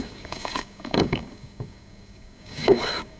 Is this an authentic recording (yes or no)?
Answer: no